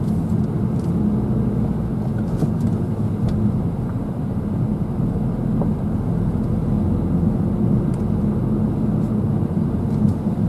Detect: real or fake real